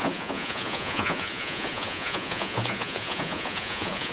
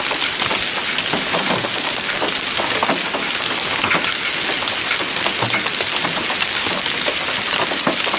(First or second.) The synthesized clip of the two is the first